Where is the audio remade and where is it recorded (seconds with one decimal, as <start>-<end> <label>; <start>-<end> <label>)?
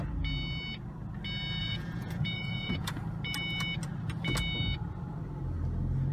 0.0-1.6 recorded; 1.6-3.0 remade; 3.0-6.1 recorded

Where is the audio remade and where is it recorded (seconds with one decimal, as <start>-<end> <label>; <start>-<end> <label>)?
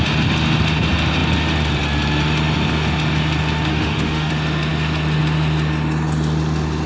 0.0-3.7 recorded; 3.7-4.3 remade; 4.3-6.9 recorded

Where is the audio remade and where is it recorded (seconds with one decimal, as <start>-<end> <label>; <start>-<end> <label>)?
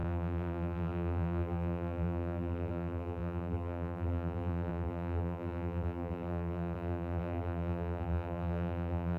0.0-9.2 remade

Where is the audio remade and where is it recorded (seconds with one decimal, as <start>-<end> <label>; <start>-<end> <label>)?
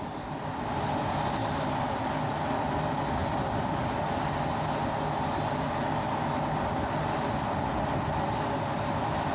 0.0-9.3 recorded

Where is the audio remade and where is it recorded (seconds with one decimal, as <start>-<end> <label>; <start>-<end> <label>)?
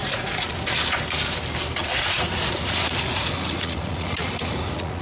0.0-0.6 remade; 0.6-1.8 recorded; 1.8-5.0 remade